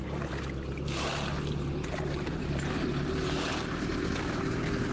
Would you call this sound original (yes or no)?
yes